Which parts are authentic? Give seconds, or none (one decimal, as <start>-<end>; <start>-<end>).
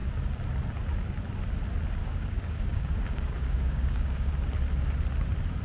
0.0-2.0; 4.3-5.6